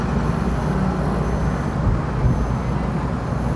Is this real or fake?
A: real